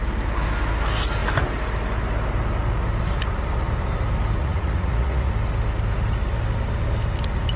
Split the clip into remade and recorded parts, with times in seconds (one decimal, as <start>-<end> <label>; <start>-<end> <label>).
0.0-4.4 recorded; 4.4-5.3 remade; 5.3-7.6 recorded